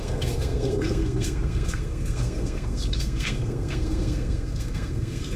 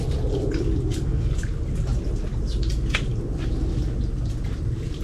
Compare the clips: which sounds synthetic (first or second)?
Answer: first